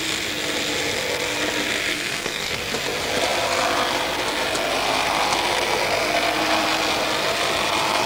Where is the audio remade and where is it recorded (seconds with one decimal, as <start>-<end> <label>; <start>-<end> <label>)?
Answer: 0.0-1.9 recorded; 1.9-2.6 remade; 2.6-8.1 recorded